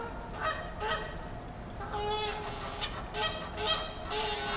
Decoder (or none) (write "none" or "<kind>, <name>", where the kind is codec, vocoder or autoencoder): none